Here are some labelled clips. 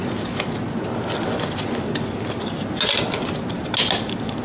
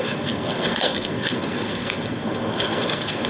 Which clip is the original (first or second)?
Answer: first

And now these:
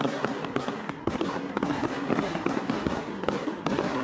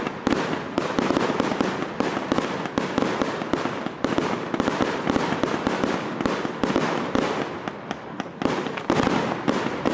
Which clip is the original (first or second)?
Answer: second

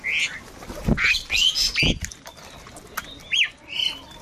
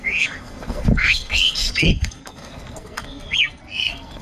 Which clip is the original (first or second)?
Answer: first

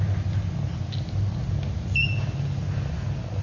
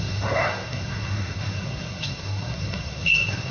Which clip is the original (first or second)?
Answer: first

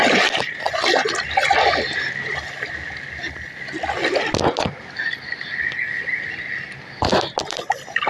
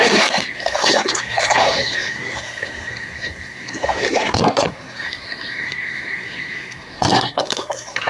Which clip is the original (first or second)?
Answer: first